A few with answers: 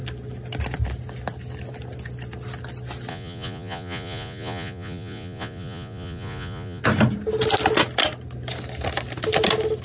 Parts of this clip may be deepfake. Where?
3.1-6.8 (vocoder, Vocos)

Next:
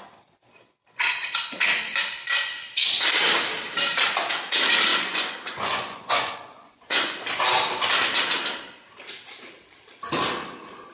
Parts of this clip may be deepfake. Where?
4.9-7.4 (vocoder, Vocos)

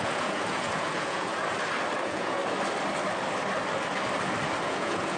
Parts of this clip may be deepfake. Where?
0.0-1.3 (vocoder, Vocos); 2.0-2.4; 4.6-5.2

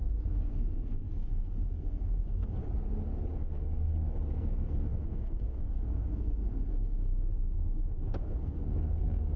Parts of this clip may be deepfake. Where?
0.0-2.6 (codec, SNAC); 3.3-9.4